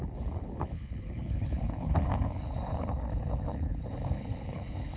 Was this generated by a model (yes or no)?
yes